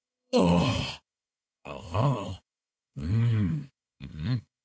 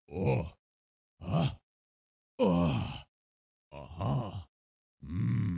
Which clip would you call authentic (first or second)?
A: second